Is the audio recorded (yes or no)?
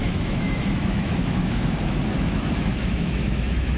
no